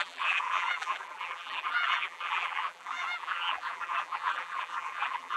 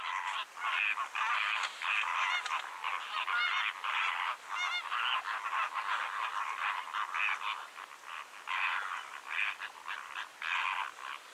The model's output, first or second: first